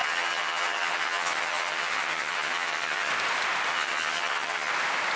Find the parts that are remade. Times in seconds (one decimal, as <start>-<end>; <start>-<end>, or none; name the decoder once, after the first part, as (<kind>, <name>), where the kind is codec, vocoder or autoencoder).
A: 0.0-3.1 (vocoder, HiFi-GAN); 3.7-4.7